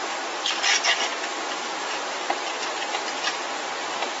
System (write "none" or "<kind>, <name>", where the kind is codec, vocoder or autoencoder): none